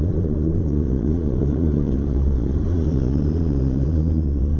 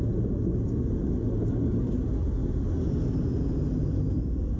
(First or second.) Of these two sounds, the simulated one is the first